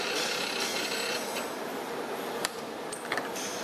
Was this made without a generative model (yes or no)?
yes